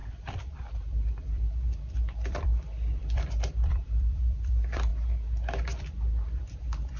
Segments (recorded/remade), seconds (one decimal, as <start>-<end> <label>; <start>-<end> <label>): 0.0-4.9 remade; 4.9-6.1 recorded; 6.1-7.0 remade